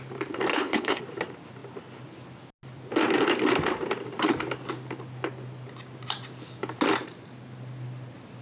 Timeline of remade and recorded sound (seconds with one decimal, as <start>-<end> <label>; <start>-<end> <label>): 0.0-0.5 recorded; 0.5-1.0 remade; 1.0-8.4 recorded